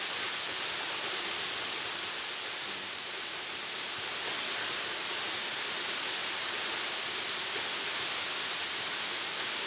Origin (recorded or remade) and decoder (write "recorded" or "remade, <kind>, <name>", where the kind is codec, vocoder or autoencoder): recorded